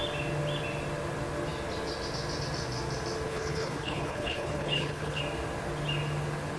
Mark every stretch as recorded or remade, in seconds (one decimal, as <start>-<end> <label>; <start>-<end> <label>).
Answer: 0.0-3.3 recorded; 3.3-5.2 remade; 5.2-6.6 recorded